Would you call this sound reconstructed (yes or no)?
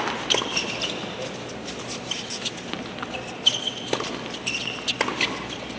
no